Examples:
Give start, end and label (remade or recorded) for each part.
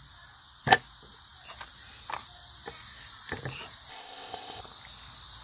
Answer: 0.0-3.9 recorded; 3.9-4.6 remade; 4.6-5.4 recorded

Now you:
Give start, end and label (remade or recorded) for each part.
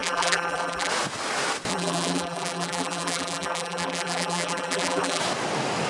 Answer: 0.0-0.9 remade; 0.9-1.7 recorded; 1.7-5.2 remade; 5.2-5.9 recorded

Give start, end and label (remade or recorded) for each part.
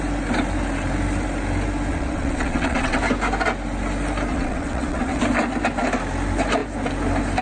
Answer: 0.0-1.9 recorded; 1.9-3.0 remade; 3.0-4.3 recorded; 4.3-5.2 remade; 5.2-7.4 recorded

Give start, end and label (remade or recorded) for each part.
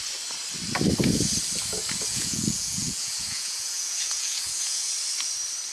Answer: 0.0-2.1 recorded; 2.1-4.9 remade; 4.9-5.7 recorded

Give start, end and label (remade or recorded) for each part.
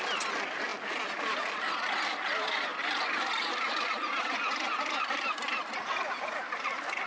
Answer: 0.0-7.1 recorded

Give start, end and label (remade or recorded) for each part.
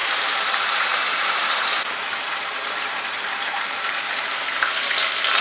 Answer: 0.0-1.9 remade; 1.9-2.3 recorded; 2.3-4.9 remade; 4.9-5.4 recorded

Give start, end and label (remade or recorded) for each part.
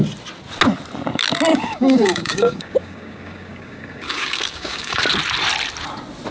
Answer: 0.0-1.5 recorded; 1.5-5.0 remade; 5.0-6.3 recorded